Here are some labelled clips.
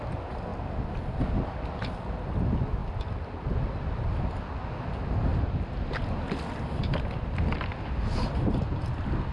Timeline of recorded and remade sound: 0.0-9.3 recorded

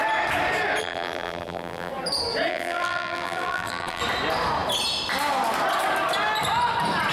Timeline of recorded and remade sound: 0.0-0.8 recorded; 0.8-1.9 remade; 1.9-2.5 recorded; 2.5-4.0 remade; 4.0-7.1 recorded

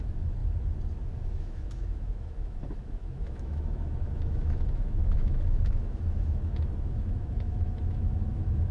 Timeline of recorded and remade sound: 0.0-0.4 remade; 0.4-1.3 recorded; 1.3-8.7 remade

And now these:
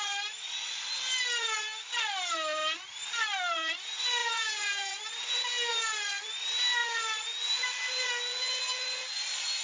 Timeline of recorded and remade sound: 0.0-4.2 recorded; 4.2-5.0 remade; 5.0-9.6 recorded

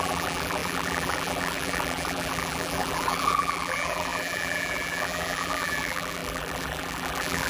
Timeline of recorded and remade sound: 0.0-7.5 remade

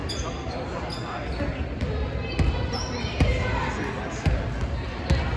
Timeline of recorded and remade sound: 0.0-5.4 recorded

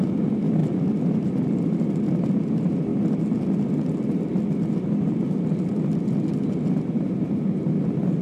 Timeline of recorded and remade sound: 0.0-0.6 recorded; 0.6-1.9 remade; 1.9-8.2 recorded